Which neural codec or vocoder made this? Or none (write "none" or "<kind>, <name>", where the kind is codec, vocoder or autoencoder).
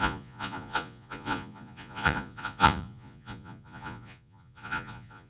vocoder, Vocos